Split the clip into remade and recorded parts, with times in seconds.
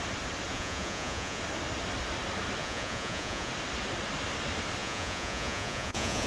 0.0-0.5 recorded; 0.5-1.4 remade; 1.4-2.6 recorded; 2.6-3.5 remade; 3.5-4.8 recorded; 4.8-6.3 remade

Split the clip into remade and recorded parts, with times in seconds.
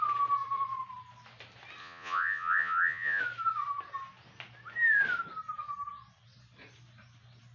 0.0-1.8 recorded; 1.8-3.2 remade; 3.2-7.5 recorded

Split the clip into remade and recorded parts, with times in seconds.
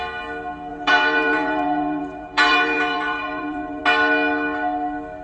0.0-0.7 recorded; 0.7-3.8 remade; 3.8-5.2 recorded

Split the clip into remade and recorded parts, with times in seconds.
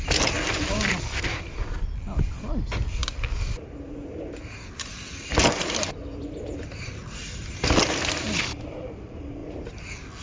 0.0-10.2 recorded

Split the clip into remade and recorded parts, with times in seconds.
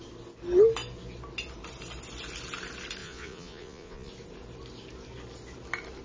0.0-3.0 recorded; 3.0-4.1 remade; 4.1-6.0 recorded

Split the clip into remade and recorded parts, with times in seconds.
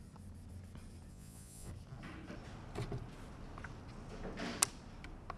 0.0-1.1 recorded; 1.1-1.7 remade; 1.7-5.4 recorded